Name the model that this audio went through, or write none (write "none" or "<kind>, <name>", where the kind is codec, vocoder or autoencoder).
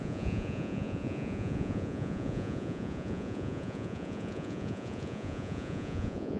vocoder, Vocos